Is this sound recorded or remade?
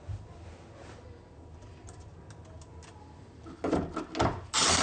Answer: recorded